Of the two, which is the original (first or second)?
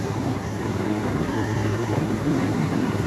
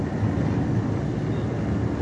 second